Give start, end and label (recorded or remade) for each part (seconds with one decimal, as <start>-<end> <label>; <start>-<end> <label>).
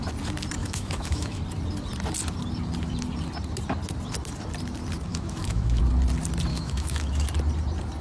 0.0-0.6 recorded; 0.6-1.4 remade; 1.4-5.1 recorded; 5.1-5.8 remade; 5.8-6.5 recorded; 6.5-7.3 remade; 7.3-8.0 recorded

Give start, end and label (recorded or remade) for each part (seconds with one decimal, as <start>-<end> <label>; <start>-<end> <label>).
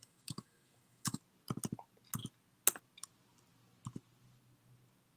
0.0-1.2 remade; 1.2-5.2 recorded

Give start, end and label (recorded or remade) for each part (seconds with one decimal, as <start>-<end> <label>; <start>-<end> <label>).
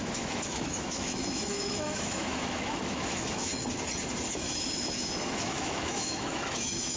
0.0-3.5 remade; 3.5-4.3 recorded; 4.3-7.0 remade